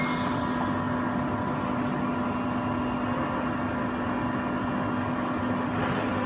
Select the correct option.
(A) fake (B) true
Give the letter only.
B